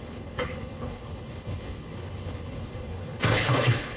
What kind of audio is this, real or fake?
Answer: fake